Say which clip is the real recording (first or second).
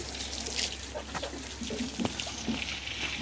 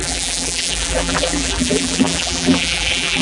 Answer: first